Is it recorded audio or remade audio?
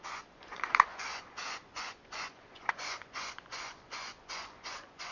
remade